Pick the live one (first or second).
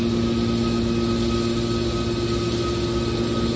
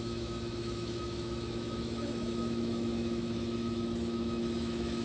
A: first